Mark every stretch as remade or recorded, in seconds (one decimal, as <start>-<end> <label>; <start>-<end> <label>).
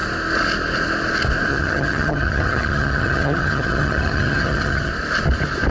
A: 0.0-1.5 recorded; 1.5-4.9 remade; 4.9-5.7 recorded